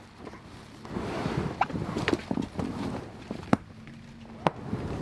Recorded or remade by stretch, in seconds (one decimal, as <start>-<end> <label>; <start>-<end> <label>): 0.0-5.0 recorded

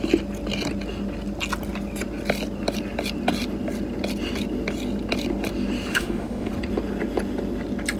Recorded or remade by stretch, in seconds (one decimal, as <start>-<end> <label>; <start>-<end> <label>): 0.0-5.9 recorded; 5.9-6.5 remade; 6.5-8.0 recorded

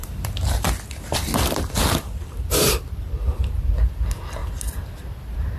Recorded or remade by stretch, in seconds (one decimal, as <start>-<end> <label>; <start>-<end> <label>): 0.0-3.4 remade; 3.4-5.6 recorded

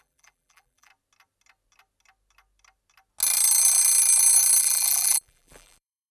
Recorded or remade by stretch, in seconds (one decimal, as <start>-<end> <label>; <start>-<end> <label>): 0.0-0.9 remade; 0.9-4.6 recorded; 4.6-6.1 remade

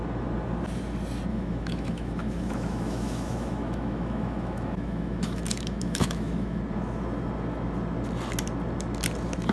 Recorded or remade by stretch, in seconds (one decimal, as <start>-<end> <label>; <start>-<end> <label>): 0.0-1.3 recorded; 1.3-6.6 remade; 6.6-9.5 recorded

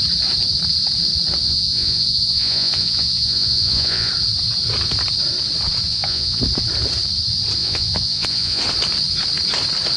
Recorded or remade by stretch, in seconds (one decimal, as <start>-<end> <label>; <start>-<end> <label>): 0.0-1.4 recorded; 1.4-4.1 remade; 4.1-5.9 recorded; 5.9-6.4 remade; 6.4-7.6 recorded; 7.6-8.6 remade; 8.6-10.0 recorded

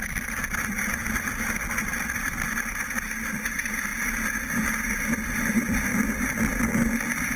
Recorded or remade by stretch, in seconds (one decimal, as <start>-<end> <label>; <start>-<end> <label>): 0.0-3.9 remade; 3.9-4.9 recorded; 4.9-5.9 remade; 5.9-7.4 recorded

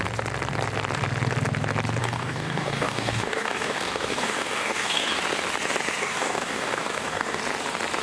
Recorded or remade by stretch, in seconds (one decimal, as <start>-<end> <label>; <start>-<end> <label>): 0.0-2.0 recorded; 2.0-5.2 remade; 5.2-6.0 recorded; 6.0-7.4 remade; 7.4-8.0 recorded